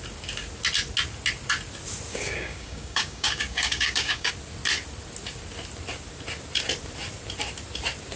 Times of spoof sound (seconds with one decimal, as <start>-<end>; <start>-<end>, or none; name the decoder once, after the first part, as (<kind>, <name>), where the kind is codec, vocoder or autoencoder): 2.1-4.3 (codec, DAC)